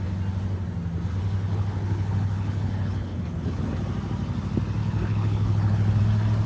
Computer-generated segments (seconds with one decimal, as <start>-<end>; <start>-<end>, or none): 1.4-3.7; 4.8-6.0